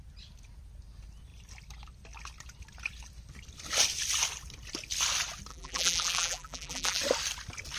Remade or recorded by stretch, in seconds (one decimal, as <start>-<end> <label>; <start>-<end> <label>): 0.0-5.5 recorded; 5.5-7.0 remade; 7.0-7.8 recorded